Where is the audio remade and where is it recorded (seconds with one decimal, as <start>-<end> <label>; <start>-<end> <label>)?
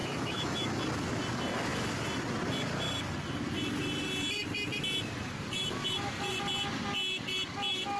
0.0-0.8 remade; 0.8-8.0 recorded